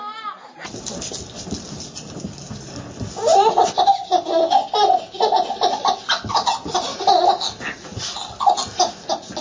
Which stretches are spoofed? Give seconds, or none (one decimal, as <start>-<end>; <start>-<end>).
none